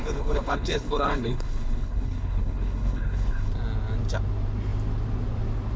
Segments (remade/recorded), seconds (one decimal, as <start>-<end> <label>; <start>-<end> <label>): 0.0-3.5 remade; 3.5-5.8 recorded